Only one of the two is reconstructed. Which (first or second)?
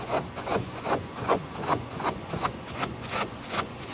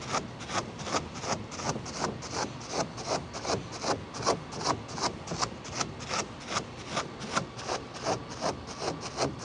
first